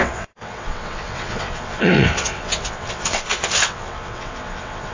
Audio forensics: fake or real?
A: fake